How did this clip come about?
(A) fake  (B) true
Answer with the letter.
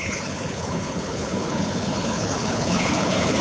A